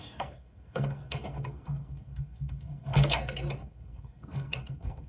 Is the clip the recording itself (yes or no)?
no